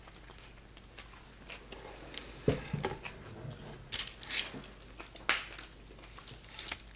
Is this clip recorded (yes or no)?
yes